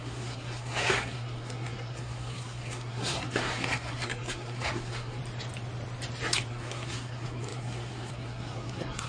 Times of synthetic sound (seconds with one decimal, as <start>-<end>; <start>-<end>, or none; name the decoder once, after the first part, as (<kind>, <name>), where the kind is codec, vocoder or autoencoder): 0.0-5.2 (codec, SNAC); 6.5-9.1